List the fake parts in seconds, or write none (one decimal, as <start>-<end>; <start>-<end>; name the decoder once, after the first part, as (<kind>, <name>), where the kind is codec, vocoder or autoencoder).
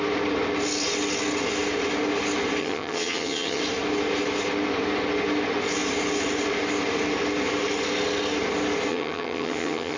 2.6-3.6 (vocoder, HiFi-GAN); 8.9-10.0